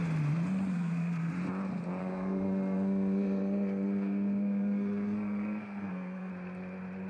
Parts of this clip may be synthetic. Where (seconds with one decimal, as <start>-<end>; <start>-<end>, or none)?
0.7-1.3; 2.0-6.3